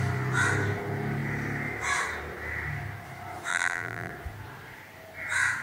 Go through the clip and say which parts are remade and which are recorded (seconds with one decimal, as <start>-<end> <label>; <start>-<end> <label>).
0.0-3.5 recorded; 3.5-4.1 remade; 4.1-5.6 recorded